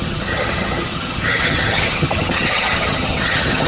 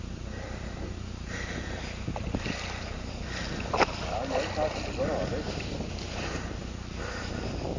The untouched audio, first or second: second